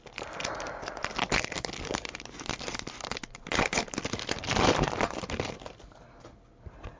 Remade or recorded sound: recorded